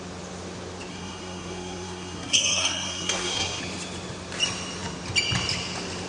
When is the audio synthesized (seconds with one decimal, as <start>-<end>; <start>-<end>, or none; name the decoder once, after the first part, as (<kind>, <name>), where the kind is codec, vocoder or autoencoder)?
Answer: 0.9-3.6 (codec, SNAC)